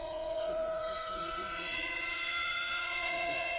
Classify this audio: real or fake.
fake